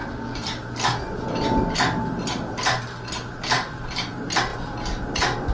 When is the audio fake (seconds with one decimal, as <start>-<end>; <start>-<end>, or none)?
none